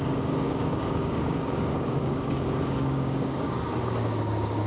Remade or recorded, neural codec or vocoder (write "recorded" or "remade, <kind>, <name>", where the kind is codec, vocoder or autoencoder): remade, codec, DAC